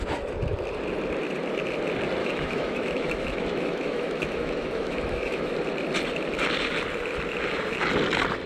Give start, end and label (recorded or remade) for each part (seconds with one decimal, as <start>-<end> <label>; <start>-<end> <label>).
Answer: 0.0-2.2 recorded; 2.2-5.5 remade; 5.5-8.5 recorded